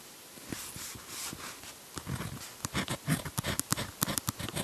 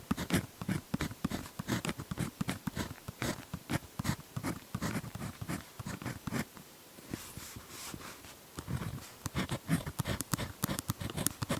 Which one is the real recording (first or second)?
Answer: first